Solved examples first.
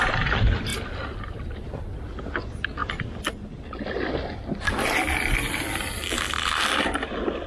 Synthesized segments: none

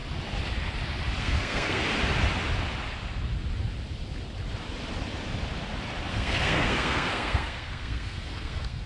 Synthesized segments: 1.2-1.8 (codec, SNAC); 6.1-8.9

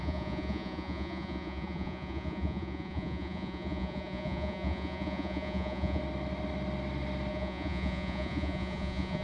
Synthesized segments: 0.0-6.0 (vocoder, Vocos); 7.3-9.2

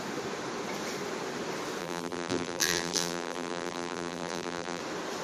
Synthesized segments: 1.8-4.8 (vocoder, BigVGAN v2)

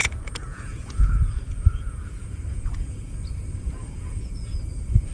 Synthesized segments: 0.0-3.1 (vocoder, Vocos); 3.8-5.1

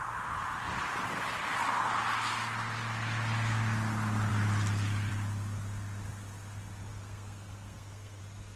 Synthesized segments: 6.9-8.2 (codec, SNAC)

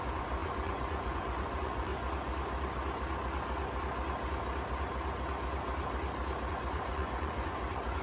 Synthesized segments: 0.0-1.9 (vocoder, Vocos); 6.5-8.0

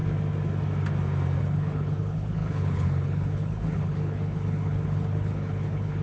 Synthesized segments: 1.4-6.0 (codec, HILCodec)